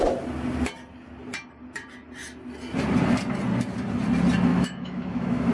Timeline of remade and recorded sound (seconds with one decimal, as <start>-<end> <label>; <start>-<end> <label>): 0.0-4.5 recorded; 4.5-5.5 remade